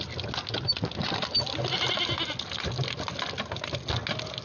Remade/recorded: recorded